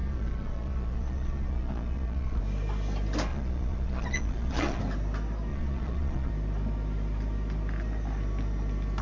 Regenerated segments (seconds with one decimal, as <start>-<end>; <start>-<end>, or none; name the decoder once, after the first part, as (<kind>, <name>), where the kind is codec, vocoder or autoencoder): 0.0-2.4 (vocoder, Vocos); 3.3-4.8; 5.5-6.3